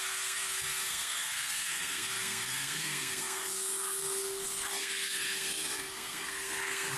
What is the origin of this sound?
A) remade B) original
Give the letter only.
A